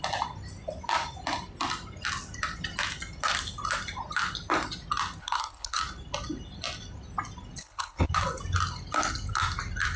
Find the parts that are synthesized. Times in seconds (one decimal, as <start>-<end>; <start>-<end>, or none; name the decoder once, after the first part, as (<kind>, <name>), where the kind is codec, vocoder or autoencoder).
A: 5.2-5.8 (codec, HILCodec); 7.6-8.1